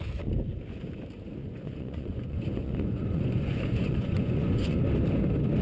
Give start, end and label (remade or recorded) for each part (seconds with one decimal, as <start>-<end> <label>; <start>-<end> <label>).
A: 0.0-1.4 recorded; 1.4-4.8 remade; 4.8-5.6 recorded